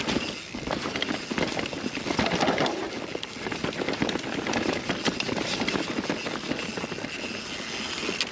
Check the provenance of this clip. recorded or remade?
recorded